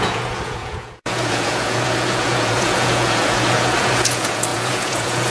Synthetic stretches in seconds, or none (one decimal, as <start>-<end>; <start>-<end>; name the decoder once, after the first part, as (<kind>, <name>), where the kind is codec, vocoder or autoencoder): 0.0-5.3 (vocoder, Vocos)